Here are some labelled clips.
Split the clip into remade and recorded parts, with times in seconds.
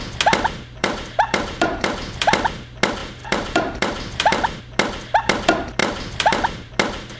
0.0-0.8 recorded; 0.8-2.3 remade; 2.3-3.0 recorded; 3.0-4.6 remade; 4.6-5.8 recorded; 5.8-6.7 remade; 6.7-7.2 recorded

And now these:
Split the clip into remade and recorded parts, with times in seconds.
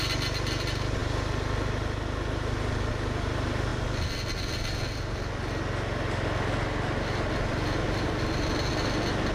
0.0-9.3 recorded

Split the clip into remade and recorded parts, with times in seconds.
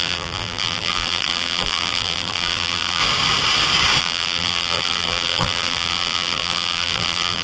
0.0-3.0 remade; 3.0-4.0 recorded; 4.0-7.4 remade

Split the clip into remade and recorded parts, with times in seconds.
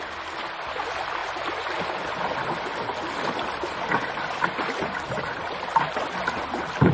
0.0-6.9 recorded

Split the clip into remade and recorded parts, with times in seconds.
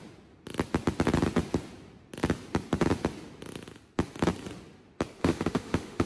0.0-5.2 recorded; 5.2-6.1 remade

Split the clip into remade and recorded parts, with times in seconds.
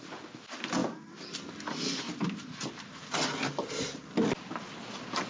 0.0-5.3 recorded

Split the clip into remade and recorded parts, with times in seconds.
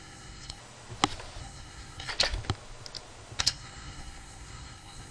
0.0-0.6 remade; 0.6-1.4 recorded; 1.4-2.1 remade; 2.1-3.4 recorded; 3.4-5.1 remade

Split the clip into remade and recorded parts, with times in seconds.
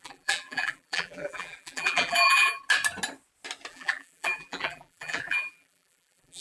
0.0-2.6 remade; 2.6-3.7 recorded; 3.7-6.4 remade